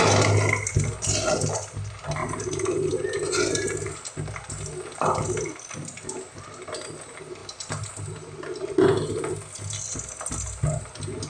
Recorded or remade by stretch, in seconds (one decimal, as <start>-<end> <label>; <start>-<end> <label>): 0.0-2.2 recorded; 2.2-2.9 remade; 2.9-11.3 recorded